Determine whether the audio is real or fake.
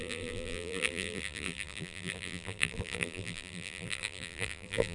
fake